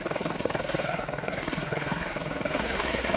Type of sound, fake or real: fake